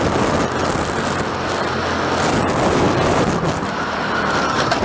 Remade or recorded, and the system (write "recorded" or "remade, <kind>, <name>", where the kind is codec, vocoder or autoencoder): recorded